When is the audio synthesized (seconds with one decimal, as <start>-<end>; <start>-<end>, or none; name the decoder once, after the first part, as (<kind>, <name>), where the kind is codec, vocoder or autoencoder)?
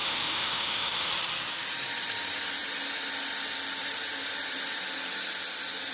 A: 0.0-1.1 (autoencoder, DAC-VAE)